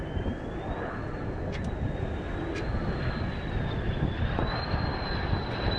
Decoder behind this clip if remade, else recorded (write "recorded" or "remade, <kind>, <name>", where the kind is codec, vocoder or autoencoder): recorded